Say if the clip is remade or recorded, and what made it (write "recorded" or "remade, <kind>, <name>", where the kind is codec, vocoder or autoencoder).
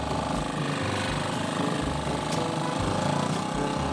recorded